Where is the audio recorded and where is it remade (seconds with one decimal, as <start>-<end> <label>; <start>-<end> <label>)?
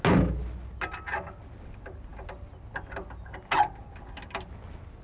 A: 0.0-5.0 recorded